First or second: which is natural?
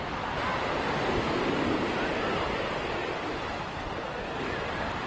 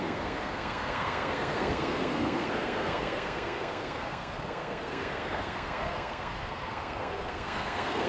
first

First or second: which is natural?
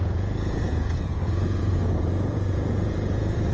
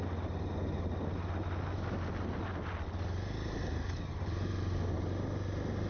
second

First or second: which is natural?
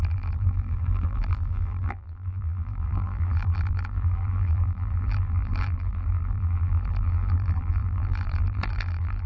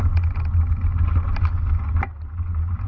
second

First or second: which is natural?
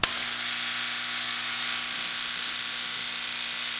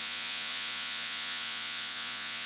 first